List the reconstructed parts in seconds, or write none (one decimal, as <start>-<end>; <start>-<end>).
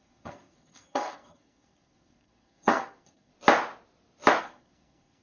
0.0-3.3; 4.4-5.2